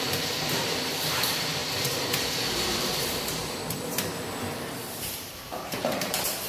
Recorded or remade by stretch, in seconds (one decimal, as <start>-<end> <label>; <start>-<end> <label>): 0.0-6.5 remade